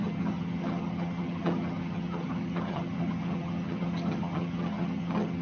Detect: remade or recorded remade